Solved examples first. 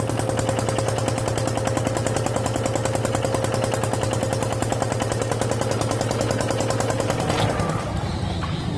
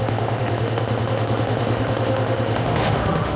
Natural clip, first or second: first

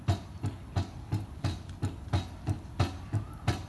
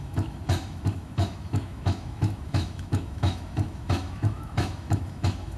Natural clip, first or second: first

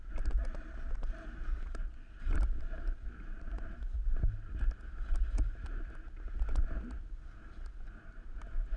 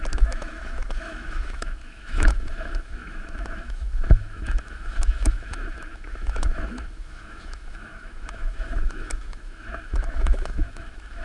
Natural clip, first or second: first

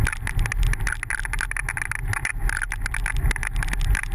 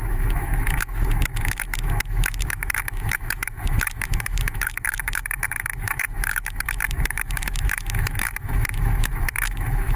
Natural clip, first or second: first